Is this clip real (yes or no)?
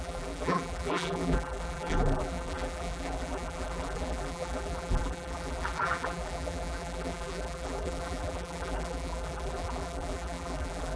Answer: no